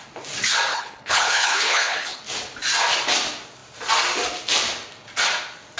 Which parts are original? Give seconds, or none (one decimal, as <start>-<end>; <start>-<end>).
0.0-0.7; 2.2-5.8